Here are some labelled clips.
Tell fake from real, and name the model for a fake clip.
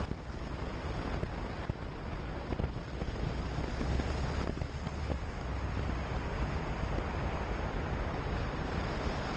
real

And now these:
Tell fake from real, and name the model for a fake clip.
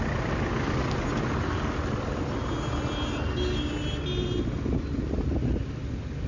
real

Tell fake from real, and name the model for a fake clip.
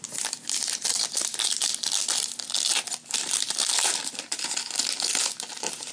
real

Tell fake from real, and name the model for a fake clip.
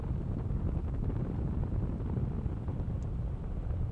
real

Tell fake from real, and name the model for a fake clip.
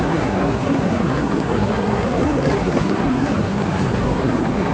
fake, codec, SNAC